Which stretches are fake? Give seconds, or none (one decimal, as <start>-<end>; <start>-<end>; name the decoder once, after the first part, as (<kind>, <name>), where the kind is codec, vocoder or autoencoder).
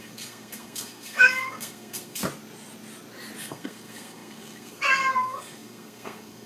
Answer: 0.0-2.2 (codec, SNAC); 3.4-6.5